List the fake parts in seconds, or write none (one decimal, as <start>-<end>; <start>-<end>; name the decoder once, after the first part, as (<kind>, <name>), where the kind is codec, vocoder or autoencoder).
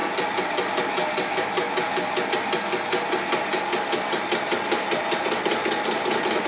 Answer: none